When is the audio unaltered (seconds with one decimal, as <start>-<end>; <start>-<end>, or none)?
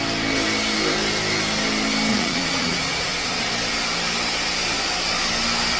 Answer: 0.0-2.1; 3.5-5.8